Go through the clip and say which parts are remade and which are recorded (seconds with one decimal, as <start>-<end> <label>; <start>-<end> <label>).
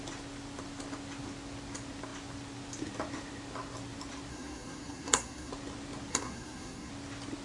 0.0-4.3 recorded; 4.3-5.5 remade; 5.5-6.1 recorded; 6.1-6.9 remade; 6.9-7.4 recorded